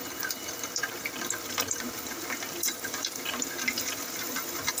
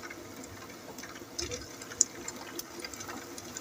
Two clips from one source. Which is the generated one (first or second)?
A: first